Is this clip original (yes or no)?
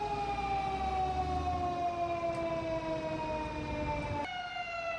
yes